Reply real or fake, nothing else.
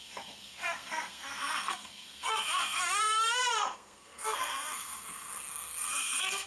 fake